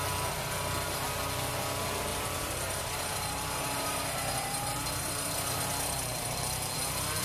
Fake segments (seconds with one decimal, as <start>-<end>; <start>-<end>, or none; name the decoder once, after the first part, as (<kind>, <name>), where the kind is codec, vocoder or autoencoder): 2.1-6.4 (vocoder, BigVGAN v2)